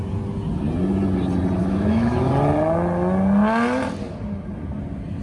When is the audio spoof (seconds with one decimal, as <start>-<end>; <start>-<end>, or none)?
1.6-2.3